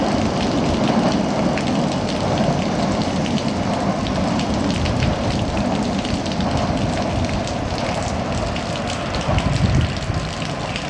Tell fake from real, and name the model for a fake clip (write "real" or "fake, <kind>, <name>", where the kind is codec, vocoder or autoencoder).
real